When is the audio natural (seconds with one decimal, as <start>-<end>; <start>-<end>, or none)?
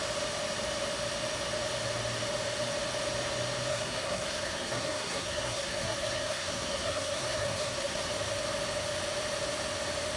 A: 0.0-3.7; 8.1-10.2